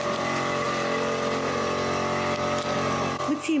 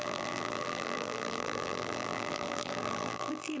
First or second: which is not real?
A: second